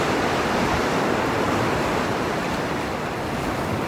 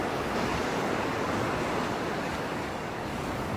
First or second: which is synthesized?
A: second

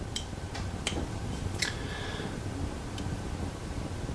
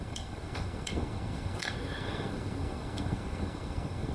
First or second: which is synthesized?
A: second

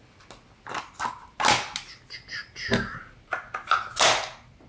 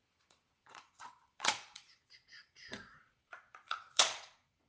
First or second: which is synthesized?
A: second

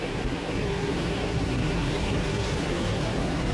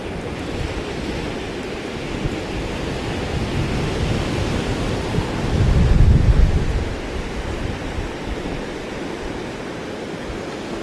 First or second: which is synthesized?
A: first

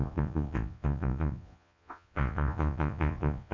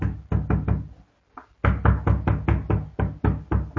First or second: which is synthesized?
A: first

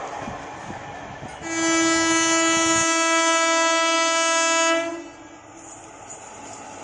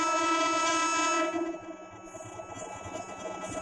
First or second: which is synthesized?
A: second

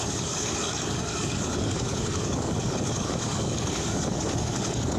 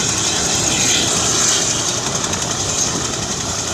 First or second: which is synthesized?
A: first